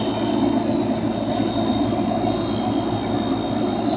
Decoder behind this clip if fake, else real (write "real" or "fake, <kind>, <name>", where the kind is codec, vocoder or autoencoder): real